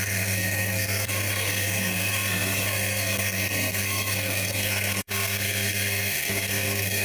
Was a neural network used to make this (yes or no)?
yes